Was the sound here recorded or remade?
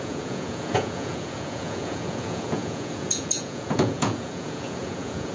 remade